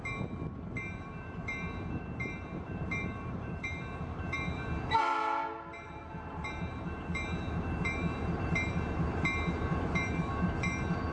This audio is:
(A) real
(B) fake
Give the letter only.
B